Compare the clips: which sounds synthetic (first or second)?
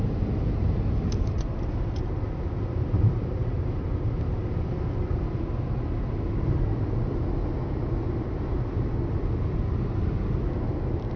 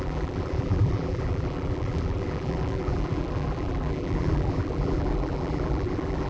second